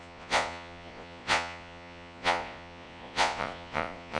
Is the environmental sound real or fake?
fake